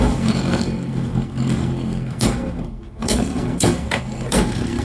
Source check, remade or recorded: remade